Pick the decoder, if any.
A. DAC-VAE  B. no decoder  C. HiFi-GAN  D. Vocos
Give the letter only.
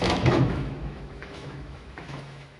A